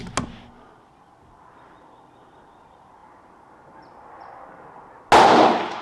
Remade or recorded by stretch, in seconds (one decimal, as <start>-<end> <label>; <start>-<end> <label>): 0.0-5.8 recorded